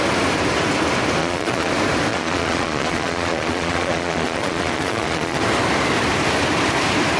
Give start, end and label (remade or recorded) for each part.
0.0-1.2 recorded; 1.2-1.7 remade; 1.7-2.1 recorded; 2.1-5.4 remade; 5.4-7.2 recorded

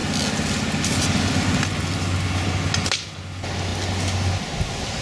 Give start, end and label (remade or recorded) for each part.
0.0-5.0 recorded